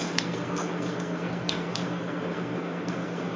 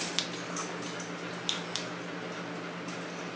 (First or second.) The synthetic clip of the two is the first